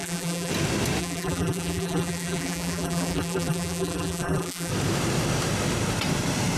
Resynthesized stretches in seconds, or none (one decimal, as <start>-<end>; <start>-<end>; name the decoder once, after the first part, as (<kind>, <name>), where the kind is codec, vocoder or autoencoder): 0.0-0.5 (vocoder, BigVGAN v2); 1.0-4.7